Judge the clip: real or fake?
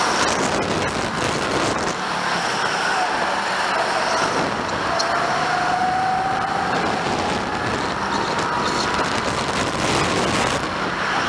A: real